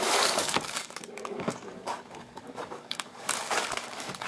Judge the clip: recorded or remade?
remade